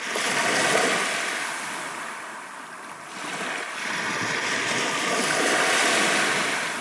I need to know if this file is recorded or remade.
recorded